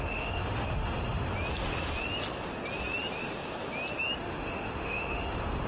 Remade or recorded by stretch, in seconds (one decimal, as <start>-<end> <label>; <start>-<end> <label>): 0.0-1.3 remade; 1.3-4.2 recorded; 4.2-5.7 remade